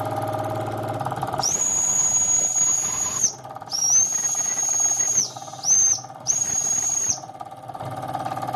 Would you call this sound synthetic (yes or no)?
yes